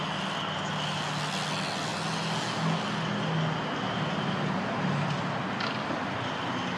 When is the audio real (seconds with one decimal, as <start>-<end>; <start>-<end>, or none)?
0.0-6.8

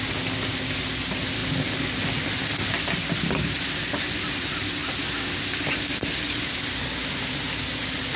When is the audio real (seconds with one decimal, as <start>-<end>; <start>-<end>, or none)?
0.0-8.2

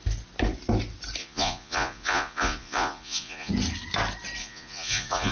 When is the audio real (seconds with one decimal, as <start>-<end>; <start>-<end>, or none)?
0.0-1.2; 3.5-4.4